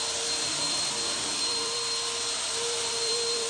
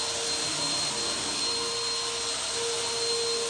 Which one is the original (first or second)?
second